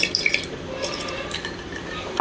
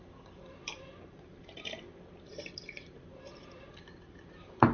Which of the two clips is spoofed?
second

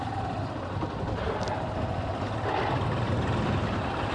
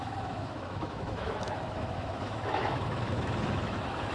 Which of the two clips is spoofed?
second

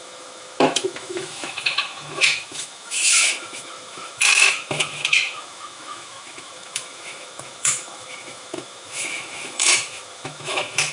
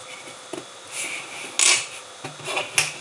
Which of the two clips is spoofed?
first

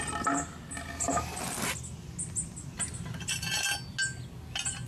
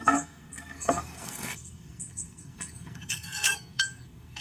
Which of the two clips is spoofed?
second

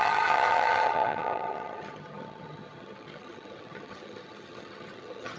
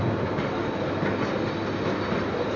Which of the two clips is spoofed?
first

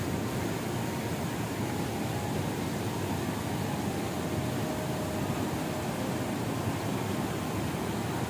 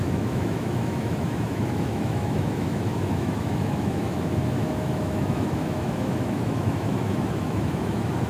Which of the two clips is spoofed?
second